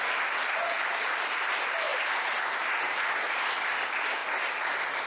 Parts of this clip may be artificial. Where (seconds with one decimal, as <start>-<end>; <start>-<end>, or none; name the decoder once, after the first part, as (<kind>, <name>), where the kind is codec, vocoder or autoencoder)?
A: 4.2-5.1 (vocoder, BigVGAN v2)